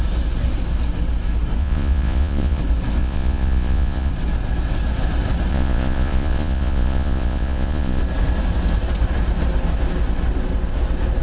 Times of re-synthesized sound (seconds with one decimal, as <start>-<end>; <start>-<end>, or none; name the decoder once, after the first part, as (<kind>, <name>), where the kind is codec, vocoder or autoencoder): 1.6-2.6 (vocoder, Vocos); 3.0-4.1; 5.5-8.0